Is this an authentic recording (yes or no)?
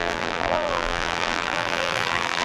no